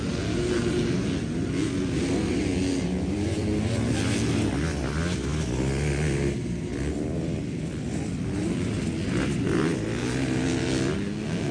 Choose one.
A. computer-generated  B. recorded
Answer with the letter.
B